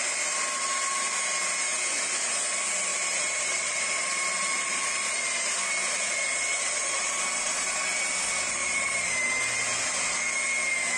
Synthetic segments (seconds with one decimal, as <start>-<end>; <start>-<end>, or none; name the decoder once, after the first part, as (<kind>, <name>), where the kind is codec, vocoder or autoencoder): 2.9-7.7 (vocoder, BigVGAN v2); 8.6-9.1